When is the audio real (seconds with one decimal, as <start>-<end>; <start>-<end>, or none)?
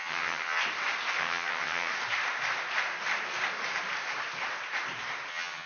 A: 0.6-1.2; 1.9-5.3